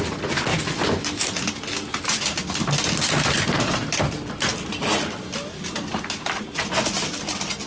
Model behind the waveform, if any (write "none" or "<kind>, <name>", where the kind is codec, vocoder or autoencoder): none